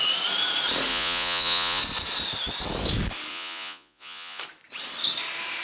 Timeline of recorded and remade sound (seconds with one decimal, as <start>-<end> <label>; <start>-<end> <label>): 0.0-0.9 recorded; 0.9-1.8 remade; 1.8-3.3 recorded; 3.3-4.4 remade; 4.4-5.6 recorded